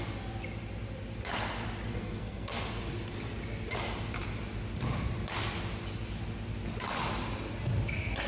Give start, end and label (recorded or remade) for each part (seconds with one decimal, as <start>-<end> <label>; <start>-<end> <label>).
0.0-1.9 recorded; 1.9-2.8 remade; 2.8-8.3 recorded